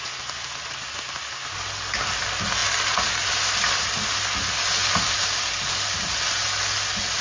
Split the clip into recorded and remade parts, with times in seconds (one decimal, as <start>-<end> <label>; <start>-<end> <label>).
0.0-7.2 recorded